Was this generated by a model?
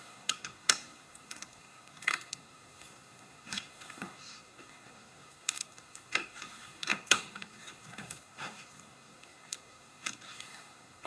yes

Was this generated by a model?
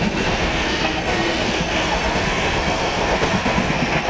yes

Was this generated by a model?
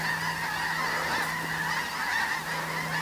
no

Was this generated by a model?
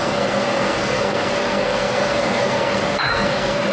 yes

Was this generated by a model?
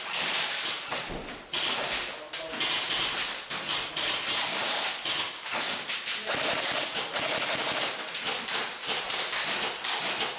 no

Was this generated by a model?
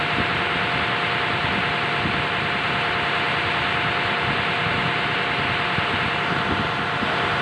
no